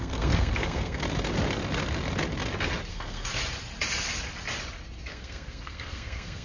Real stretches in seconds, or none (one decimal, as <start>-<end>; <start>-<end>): 1.0-2.9; 3.3-5.1